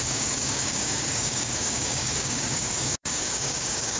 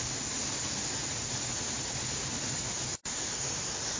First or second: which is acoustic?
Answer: second